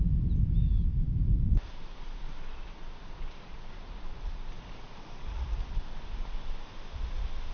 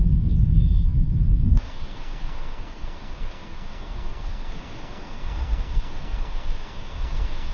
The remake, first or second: second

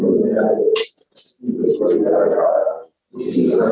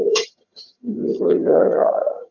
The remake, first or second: second